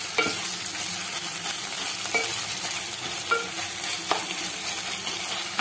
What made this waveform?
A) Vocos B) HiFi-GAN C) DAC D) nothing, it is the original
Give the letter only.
D